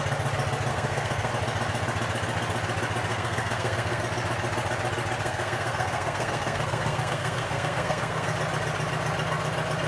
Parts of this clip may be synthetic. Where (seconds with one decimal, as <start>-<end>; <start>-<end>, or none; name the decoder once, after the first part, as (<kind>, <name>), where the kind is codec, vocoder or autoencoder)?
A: 0.7-1.3 (codec, SNAC); 3.1-4.0; 5.2-8.3